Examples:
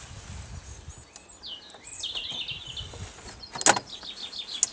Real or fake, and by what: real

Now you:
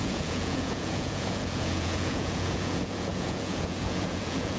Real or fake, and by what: fake, vocoder, Vocos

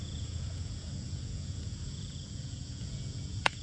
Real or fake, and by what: fake, vocoder, Vocos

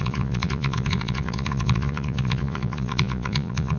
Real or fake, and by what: fake, vocoder, Vocos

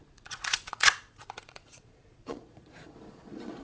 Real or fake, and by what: fake, vocoder, Vocos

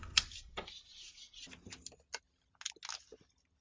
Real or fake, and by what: real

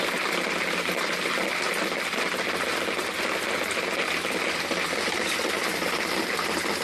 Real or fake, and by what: real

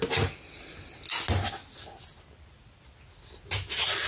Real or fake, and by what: real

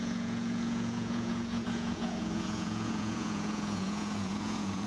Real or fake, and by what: fake, vocoder, Vocos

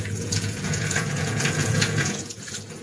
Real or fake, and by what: fake, vocoder, Vocos